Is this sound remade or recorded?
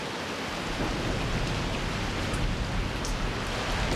recorded